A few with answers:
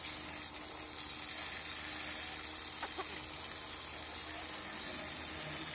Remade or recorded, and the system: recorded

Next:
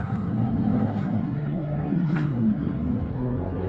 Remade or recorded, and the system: remade, codec, SNAC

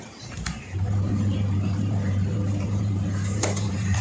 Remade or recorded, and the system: remade, vocoder, BigVGAN v2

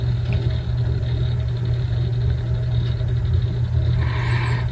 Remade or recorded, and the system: recorded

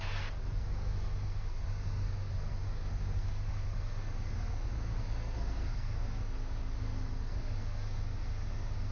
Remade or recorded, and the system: remade, codec, SNAC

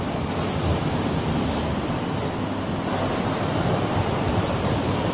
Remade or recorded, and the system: remade, vocoder, BigVGAN v2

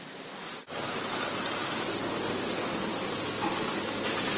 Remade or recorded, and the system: recorded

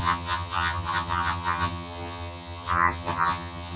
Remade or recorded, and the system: remade, vocoder, HiFi-GAN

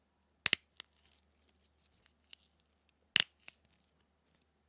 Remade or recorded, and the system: recorded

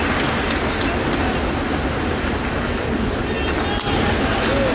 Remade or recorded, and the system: recorded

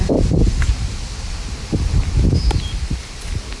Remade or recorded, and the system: recorded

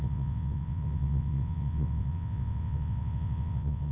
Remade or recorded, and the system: remade, vocoder, WaveNeXt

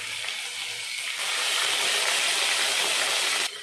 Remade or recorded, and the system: recorded